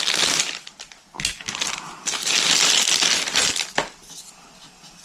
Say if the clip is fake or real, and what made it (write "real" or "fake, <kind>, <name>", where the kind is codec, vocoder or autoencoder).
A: real